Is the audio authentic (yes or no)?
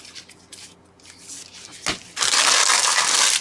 yes